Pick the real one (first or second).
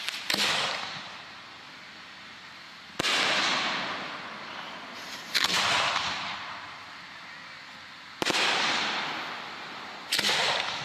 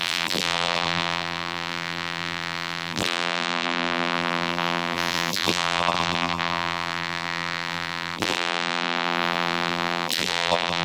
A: first